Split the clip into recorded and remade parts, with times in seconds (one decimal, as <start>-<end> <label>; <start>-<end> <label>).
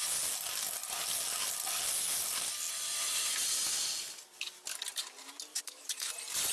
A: 0.0-5.5 recorded; 5.5-6.1 remade; 6.1-6.5 recorded